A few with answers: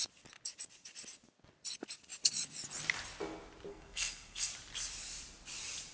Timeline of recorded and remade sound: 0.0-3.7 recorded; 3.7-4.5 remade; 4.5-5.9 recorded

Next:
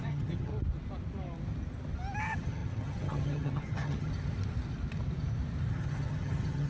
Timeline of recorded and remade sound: 0.0-0.5 remade; 0.5-2.2 recorded; 2.2-4.1 remade; 4.1-5.7 recorded; 5.7-6.7 remade

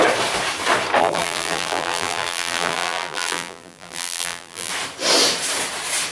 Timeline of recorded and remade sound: 0.0-1.0 recorded; 1.0-4.7 remade; 4.7-6.1 recorded

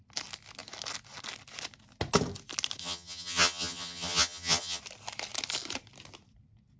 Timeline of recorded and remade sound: 0.0-2.8 recorded; 2.8-4.8 remade; 4.8-6.8 recorded

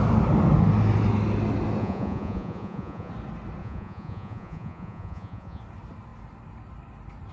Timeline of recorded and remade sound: 0.0-1.8 recorded; 1.8-3.1 remade; 3.1-3.6 recorded; 3.6-5.6 remade; 5.6-7.3 recorded

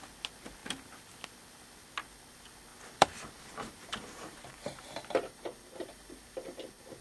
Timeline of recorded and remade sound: 0.0-2.7 recorded; 2.7-7.0 remade

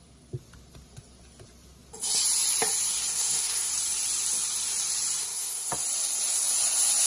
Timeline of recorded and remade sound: 0.0-3.1 recorded; 3.1-3.7 remade; 3.7-5.2 recorded; 5.2-5.7 remade; 5.7-7.1 recorded

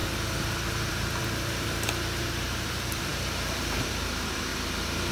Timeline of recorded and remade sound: 0.0-0.9 recorded; 0.9-4.5 remade; 4.5-5.1 recorded